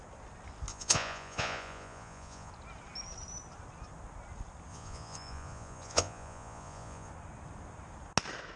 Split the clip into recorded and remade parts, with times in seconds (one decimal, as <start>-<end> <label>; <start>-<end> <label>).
0.0-0.7 recorded; 0.7-2.5 remade; 2.5-4.7 recorded; 4.7-7.1 remade; 7.1-8.6 recorded